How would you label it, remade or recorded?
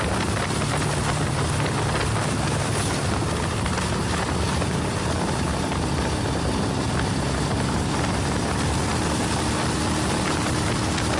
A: recorded